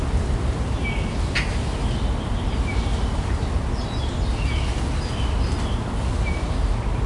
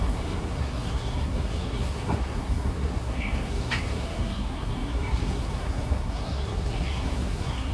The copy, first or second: second